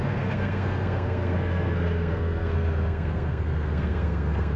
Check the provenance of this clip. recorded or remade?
remade